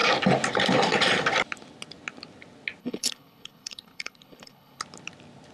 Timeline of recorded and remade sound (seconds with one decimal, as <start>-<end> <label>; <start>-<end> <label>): 0.0-2.8 recorded; 2.8-4.8 remade; 4.8-5.5 recorded